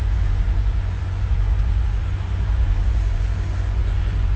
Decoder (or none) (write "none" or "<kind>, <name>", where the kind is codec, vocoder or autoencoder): vocoder, Vocos